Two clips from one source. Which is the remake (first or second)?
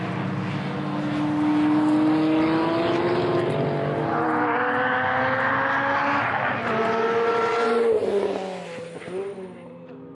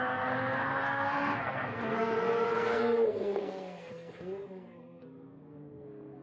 second